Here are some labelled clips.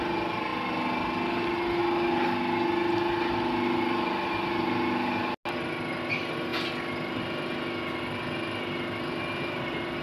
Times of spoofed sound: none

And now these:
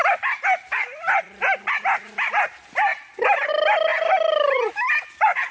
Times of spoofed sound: 0.0-1.6 (vocoder, BigVGAN v2); 3.9-4.7

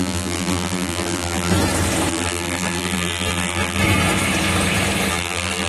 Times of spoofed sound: 0.0-1.5 (vocoder, BigVGAN v2); 2.1-3.8; 5.1-5.7

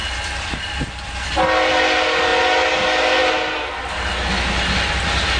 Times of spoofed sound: none